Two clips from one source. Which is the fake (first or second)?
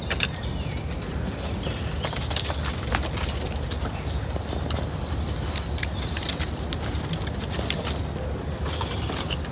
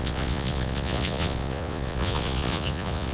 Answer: second